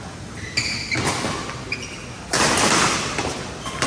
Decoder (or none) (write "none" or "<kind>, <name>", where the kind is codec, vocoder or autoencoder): none